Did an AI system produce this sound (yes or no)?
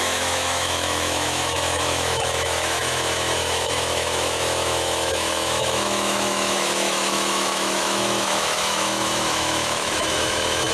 yes